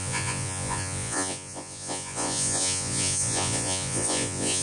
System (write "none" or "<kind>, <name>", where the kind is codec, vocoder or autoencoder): vocoder, Vocos